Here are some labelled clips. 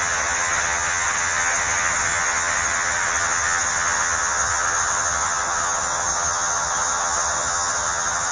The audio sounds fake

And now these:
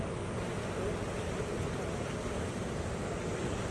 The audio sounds real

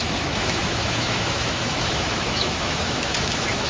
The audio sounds fake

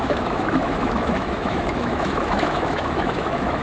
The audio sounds fake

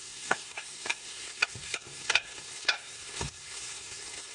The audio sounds fake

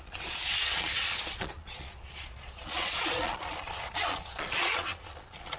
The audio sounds fake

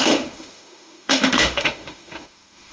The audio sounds fake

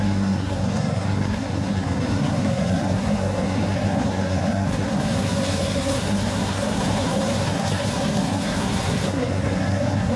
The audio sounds fake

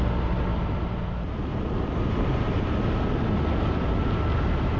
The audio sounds real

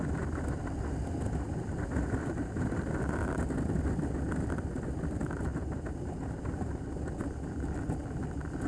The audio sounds real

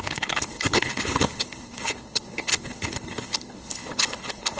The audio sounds fake